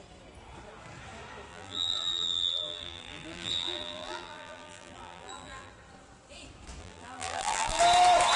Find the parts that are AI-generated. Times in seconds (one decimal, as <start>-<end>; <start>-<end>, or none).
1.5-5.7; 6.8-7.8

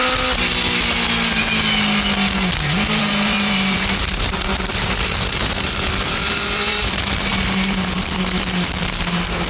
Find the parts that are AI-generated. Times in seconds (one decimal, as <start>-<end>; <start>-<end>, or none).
3.0-9.5

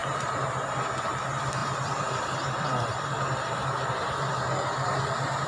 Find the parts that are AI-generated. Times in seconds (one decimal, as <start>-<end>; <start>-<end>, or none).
1.6-4.9